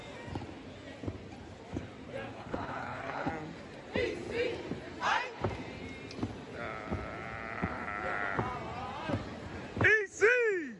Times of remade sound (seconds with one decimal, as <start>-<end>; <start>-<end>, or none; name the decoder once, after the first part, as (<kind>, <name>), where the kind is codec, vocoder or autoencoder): 2.3-3.3 (codec, HILCodec)